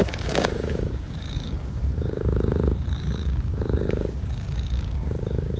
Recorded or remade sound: remade